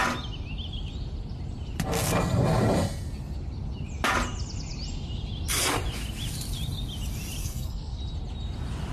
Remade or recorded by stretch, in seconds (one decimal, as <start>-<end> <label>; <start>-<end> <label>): 0.0-7.4 recorded; 7.4-8.0 remade; 8.0-8.9 recorded